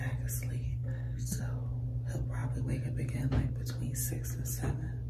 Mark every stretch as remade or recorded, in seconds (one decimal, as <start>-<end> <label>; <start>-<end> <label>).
0.0-0.7 recorded; 0.7-1.4 remade; 1.4-5.1 recorded

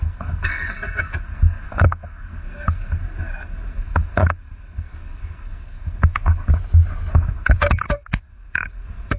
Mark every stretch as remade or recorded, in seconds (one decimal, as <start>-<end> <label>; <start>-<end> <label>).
0.0-6.5 remade; 6.5-7.1 recorded; 7.1-9.2 remade

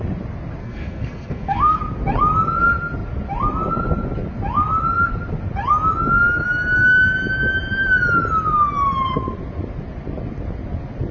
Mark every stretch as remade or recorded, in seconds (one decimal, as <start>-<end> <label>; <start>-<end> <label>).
0.0-0.6 recorded; 0.6-1.8 remade; 1.8-11.1 recorded

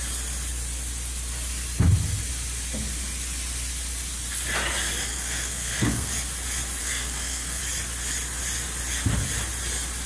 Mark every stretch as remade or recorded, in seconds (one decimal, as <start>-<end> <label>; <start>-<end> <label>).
0.0-5.1 recorded; 5.1-6.1 remade; 6.1-6.8 recorded; 6.8-7.6 remade; 7.6-10.1 recorded

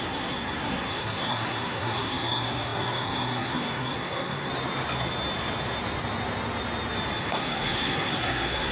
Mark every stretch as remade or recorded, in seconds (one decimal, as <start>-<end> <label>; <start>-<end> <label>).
0.0-4.5 remade; 4.5-7.2 recorded; 7.2-8.7 remade

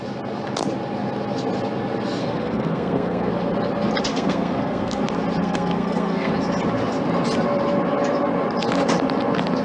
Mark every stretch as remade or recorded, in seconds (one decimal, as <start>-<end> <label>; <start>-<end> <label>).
0.0-2.2 recorded; 2.2-3.3 remade; 3.3-4.1 recorded; 4.1-5.0 remade; 5.0-5.4 recorded; 5.4-6.3 remade; 6.3-9.6 recorded

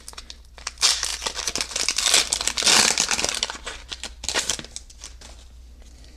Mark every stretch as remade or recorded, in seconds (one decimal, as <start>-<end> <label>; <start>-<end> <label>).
0.0-6.2 recorded